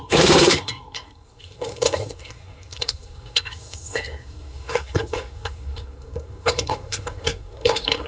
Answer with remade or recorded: remade